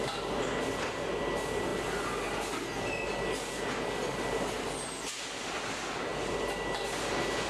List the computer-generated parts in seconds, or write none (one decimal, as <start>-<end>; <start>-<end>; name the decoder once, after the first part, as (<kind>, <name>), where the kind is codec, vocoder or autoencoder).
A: none